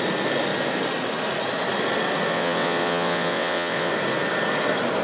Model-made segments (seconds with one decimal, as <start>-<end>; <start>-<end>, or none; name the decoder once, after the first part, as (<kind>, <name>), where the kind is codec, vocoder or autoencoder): 2.3-3.9 (vocoder, WaveNeXt)